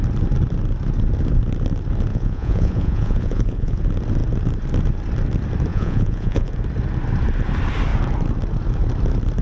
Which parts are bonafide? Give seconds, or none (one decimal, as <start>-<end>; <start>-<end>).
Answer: 0.0-2.1; 3.8-5.7; 6.5-9.4

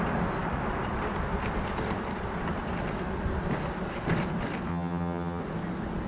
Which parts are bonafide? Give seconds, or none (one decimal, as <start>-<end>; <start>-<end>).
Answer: 0.0-4.7; 5.4-6.1

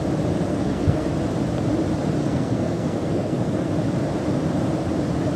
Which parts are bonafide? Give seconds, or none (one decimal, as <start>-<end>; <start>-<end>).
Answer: 0.0-0.5; 1.1-2.2; 3.7-5.4

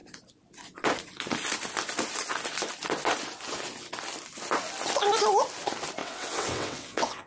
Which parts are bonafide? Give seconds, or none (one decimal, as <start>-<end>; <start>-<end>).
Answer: 0.0-6.0